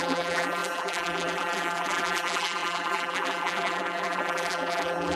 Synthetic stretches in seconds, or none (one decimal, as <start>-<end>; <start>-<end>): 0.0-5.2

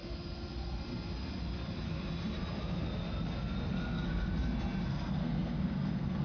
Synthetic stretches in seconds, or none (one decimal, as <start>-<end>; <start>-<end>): 3.7-4.3; 4.9-6.2

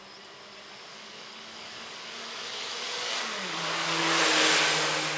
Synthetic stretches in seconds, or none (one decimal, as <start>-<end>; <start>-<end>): 0.9-4.0

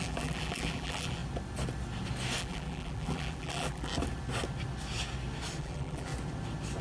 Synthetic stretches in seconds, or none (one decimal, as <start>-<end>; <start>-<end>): 0.0-1.2; 2.4-3.9; 5.6-6.1

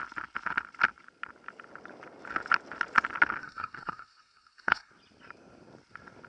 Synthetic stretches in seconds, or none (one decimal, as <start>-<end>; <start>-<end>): 3.4-4.9